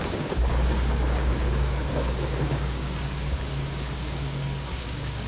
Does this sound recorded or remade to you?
remade